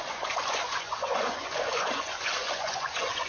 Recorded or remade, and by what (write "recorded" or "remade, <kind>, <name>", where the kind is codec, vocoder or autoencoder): remade, vocoder, Vocos